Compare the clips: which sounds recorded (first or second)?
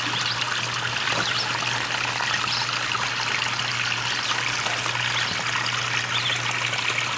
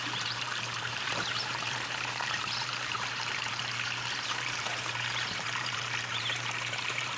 first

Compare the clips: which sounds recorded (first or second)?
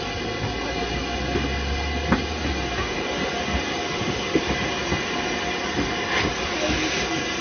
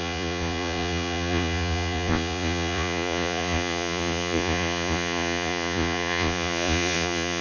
first